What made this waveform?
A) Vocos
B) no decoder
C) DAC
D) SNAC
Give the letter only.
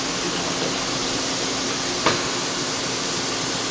B